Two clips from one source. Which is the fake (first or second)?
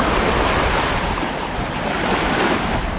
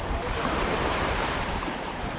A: second